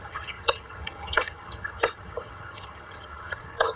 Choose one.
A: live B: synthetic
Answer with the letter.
B